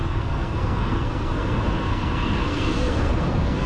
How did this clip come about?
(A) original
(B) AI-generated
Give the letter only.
B